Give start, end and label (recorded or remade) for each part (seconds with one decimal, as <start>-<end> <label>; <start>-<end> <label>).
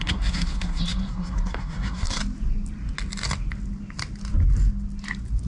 0.0-2.2 remade; 2.2-5.5 recorded